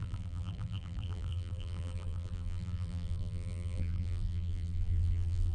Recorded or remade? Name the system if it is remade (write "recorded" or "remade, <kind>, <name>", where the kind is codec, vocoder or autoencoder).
remade, vocoder, BigVGAN v2